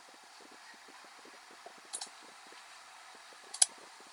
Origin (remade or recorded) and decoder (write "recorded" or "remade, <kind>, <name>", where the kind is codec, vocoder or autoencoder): recorded